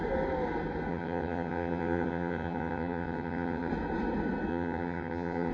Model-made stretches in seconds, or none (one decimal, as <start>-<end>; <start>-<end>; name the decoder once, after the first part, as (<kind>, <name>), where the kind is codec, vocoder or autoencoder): 0.9-3.7 (vocoder, HiFi-GAN); 4.5-5.5